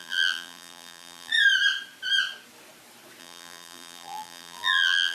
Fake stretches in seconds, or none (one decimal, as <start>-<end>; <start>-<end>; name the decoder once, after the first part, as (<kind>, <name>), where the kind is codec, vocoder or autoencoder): 0.0-1.3 (vocoder, BigVGAN v2); 3.2-5.1